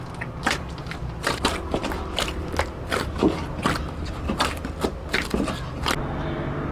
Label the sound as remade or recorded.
recorded